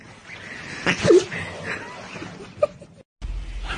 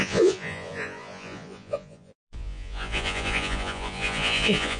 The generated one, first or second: second